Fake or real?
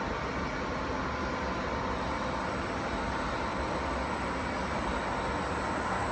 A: real